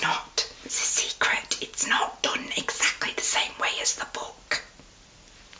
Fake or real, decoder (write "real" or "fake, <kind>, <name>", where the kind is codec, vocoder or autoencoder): real